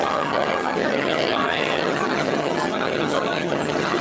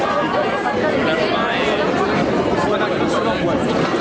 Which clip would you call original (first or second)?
second